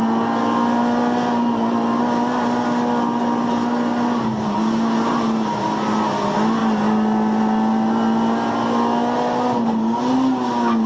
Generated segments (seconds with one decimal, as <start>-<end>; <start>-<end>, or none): none

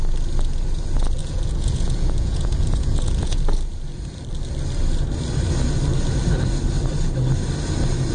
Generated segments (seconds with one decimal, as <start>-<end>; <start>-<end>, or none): 1.2-3.4